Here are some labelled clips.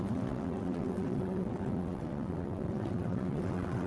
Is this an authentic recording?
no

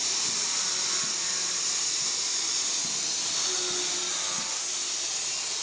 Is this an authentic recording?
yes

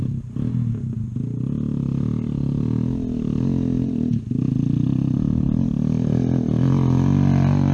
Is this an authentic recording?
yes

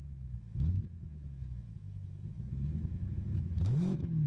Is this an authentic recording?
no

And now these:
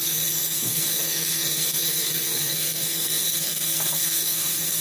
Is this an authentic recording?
no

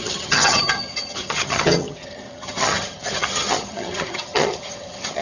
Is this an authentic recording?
no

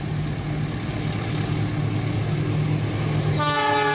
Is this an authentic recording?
yes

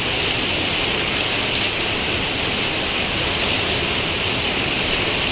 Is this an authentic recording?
yes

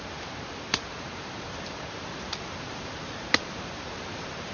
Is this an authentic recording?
no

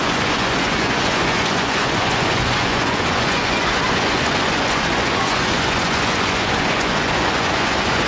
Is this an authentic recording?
no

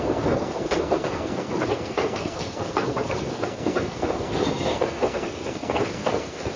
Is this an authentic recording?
no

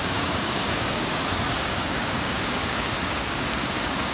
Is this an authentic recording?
no